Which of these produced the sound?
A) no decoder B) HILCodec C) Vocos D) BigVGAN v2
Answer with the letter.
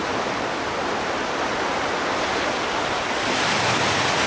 A